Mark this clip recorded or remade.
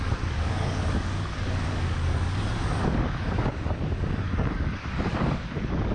remade